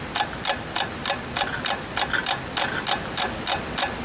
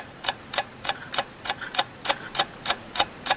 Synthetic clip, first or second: second